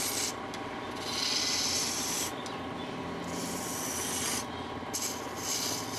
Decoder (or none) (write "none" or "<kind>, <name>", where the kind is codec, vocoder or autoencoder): none